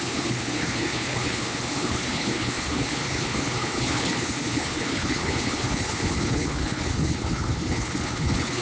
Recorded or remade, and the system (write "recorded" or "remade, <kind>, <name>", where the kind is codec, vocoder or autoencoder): remade, codec, HILCodec